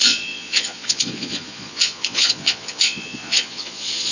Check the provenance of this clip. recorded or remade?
remade